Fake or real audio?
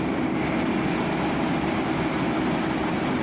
real